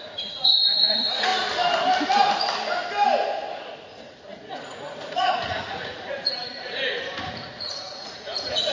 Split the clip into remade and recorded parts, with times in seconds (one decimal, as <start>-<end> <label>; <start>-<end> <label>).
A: 0.0-1.3 remade; 1.3-3.6 recorded; 3.6-8.7 remade

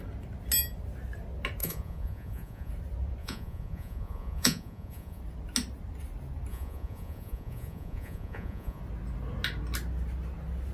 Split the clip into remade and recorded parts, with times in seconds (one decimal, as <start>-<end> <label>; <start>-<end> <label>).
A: 0.0-1.6 recorded; 1.6-2.7 remade; 2.7-3.2 recorded; 3.2-5.2 remade; 5.2-6.5 recorded; 6.5-8.8 remade; 8.8-10.7 recorded

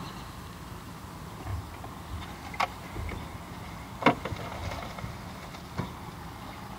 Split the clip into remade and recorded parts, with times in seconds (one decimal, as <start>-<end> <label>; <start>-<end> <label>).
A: 0.0-6.8 recorded

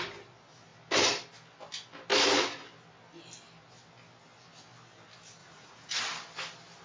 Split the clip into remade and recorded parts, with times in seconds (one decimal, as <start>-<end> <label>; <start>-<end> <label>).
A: 0.0-5.4 recorded; 5.4-6.0 remade; 6.0-6.8 recorded

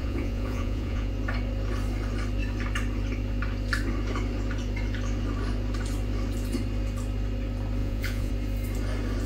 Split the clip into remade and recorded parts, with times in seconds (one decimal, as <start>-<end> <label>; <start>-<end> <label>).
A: 0.0-1.1 remade; 1.1-7.8 recorded; 7.8-8.3 remade; 8.3-9.3 recorded

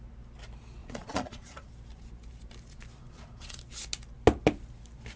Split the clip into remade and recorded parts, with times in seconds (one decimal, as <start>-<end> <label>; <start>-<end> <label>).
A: 0.0-0.8 recorded; 0.8-1.7 remade; 1.7-3.0 recorded; 3.0-3.6 remade; 3.6-5.2 recorded

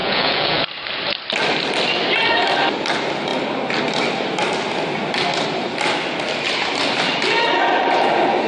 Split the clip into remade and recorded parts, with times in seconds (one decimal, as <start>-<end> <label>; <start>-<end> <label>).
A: 0.0-0.6 remade; 0.6-8.5 recorded